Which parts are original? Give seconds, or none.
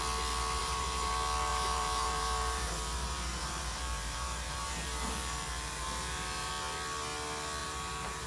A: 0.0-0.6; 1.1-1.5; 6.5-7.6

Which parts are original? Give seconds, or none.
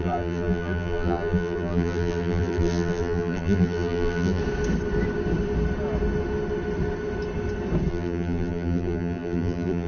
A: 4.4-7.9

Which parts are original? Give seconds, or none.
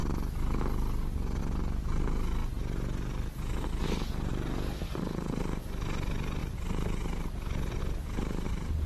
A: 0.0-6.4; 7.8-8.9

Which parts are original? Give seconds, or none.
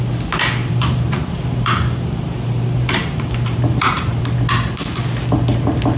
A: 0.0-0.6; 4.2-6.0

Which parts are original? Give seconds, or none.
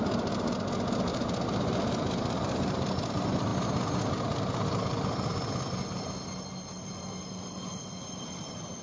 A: 0.0-1.1; 2.9-8.8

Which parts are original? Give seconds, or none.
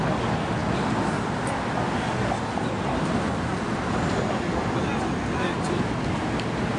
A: 0.0-6.8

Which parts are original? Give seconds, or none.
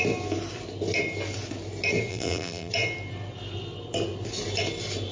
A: 0.0-2.1; 2.7-5.1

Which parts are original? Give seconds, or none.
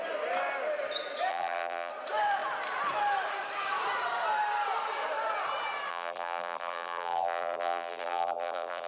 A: 0.0-1.3; 1.9-5.9